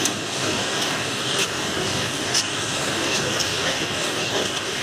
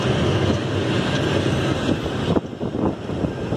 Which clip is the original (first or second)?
second